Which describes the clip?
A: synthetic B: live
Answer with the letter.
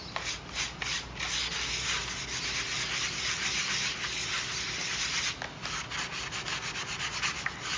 B